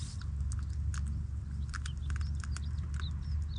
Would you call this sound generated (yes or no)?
no